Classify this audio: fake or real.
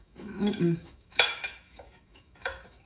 fake